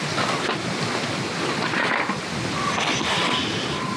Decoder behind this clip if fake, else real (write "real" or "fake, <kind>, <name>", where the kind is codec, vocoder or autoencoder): real